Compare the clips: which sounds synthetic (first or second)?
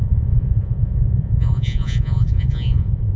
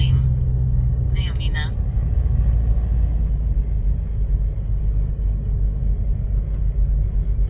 first